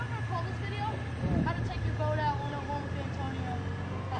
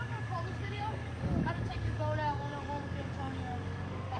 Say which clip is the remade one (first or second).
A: second